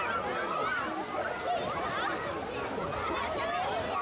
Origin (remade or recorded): recorded